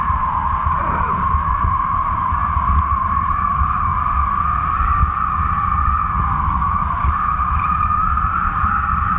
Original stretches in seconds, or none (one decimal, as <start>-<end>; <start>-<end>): 2.4-2.9; 3.9-6.7